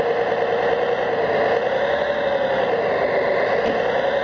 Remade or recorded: recorded